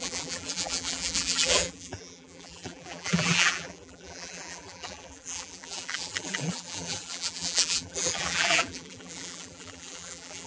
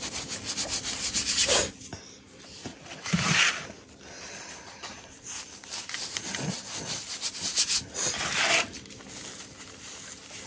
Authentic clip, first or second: second